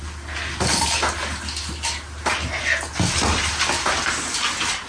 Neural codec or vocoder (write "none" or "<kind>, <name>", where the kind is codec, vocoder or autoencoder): none